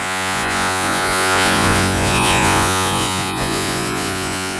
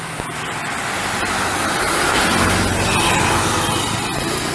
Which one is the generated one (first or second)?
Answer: first